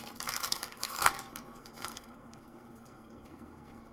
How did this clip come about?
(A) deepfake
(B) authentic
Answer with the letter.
A